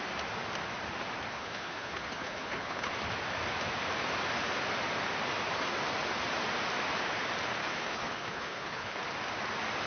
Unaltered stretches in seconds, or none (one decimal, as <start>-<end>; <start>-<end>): 0.0-1.3; 2.9-7.6; 9.0-9.9